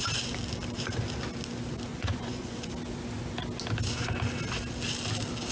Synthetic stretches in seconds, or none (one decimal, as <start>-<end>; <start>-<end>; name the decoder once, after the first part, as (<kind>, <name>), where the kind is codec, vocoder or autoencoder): 1.9-2.7 (vocoder, Vocos)